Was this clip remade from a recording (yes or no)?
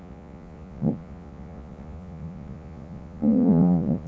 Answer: yes